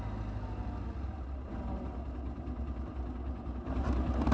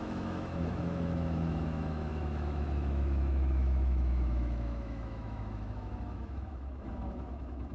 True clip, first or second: first